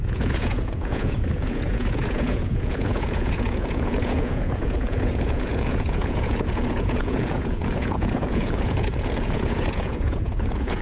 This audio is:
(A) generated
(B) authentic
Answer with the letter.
A